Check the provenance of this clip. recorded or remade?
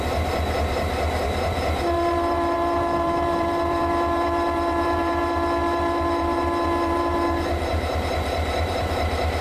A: remade